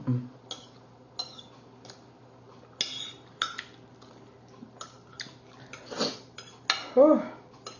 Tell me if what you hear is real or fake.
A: real